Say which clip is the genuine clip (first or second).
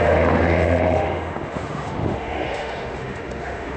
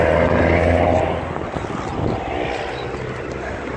second